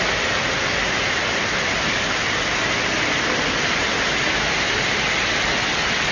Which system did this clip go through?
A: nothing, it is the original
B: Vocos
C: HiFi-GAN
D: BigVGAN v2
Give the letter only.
A